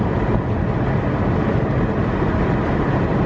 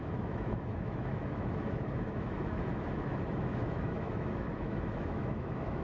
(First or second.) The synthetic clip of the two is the second